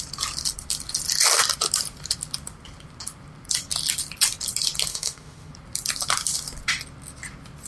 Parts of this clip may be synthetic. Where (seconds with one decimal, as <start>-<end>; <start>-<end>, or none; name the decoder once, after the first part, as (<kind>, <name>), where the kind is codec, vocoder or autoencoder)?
4.9-5.5 (autoencoder, DAC-VAE)